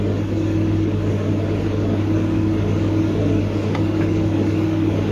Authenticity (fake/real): fake